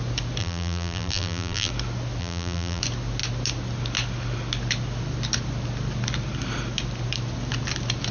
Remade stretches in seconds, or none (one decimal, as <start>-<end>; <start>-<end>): 0.4-1.7; 2.2-2.8